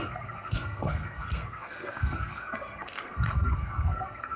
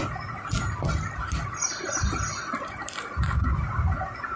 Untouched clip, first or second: second